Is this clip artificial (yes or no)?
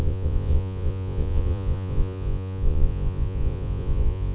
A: yes